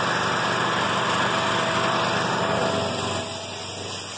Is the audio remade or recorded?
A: recorded